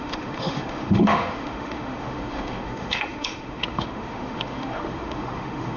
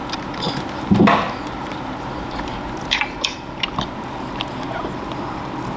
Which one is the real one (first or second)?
second